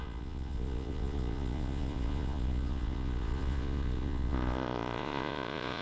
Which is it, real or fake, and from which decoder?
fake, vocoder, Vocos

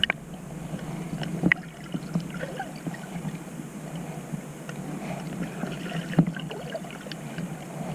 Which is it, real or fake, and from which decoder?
real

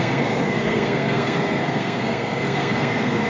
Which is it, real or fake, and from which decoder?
fake, codec, SNAC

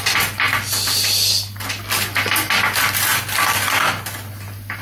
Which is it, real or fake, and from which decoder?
real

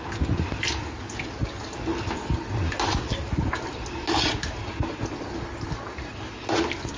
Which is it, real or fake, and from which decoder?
real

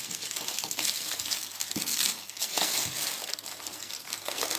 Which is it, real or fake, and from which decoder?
fake, codec, SNAC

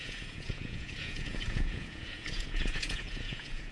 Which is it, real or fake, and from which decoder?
fake, vocoder, Vocos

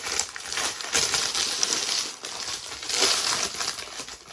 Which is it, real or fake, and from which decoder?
real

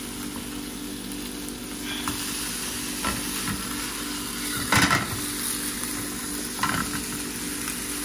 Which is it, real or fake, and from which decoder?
real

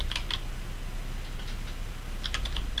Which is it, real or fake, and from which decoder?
real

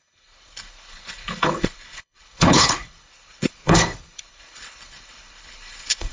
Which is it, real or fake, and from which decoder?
fake, codec, HILCodec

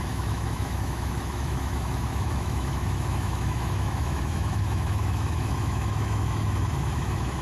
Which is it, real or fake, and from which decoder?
fake, autoencoder, DAC-VAE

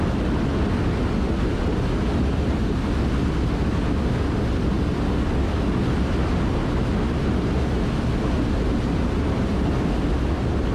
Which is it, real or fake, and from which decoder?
real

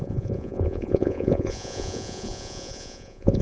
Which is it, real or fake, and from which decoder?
fake, vocoder, Vocos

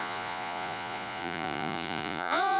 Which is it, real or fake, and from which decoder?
fake, vocoder, Vocos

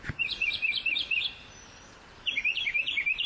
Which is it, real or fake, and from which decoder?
fake, vocoder, BigVGAN v2